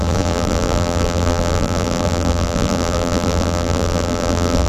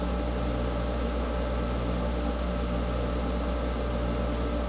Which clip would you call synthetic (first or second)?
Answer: first